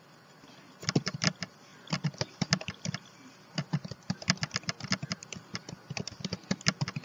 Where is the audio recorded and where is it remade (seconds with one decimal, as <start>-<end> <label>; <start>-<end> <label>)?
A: 0.0-7.0 recorded